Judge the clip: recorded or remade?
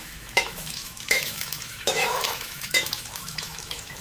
remade